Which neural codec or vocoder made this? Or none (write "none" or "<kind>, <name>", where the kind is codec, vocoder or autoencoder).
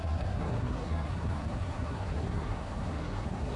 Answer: codec, SNAC